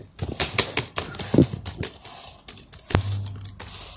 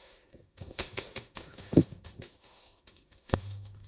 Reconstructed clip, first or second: second